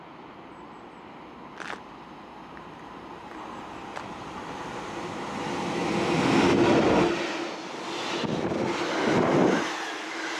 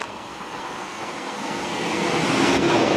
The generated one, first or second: second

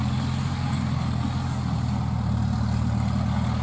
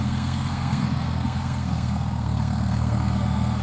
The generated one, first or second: second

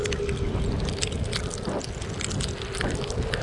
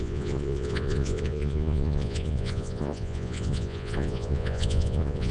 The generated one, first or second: second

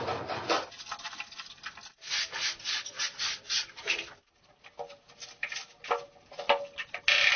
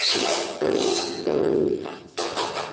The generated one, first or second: second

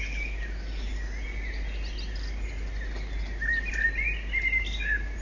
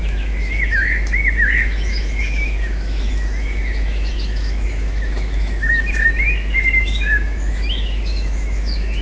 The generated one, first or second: second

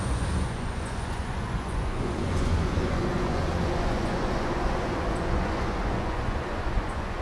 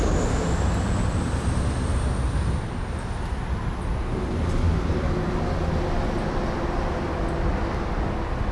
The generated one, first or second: first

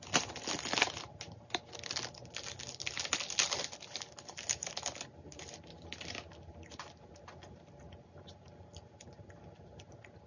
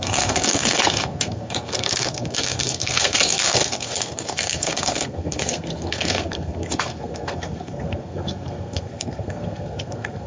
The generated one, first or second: second